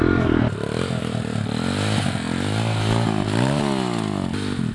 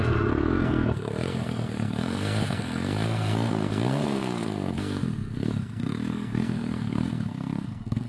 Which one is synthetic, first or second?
second